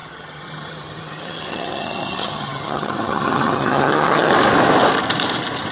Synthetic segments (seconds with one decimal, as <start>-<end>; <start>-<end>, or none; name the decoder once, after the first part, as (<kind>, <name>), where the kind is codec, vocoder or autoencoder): 0.0-4.3 (vocoder, HiFi-GAN)